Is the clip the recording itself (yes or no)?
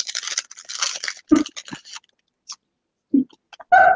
yes